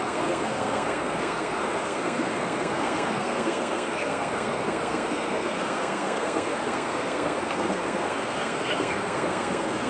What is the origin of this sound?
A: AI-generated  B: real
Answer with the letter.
A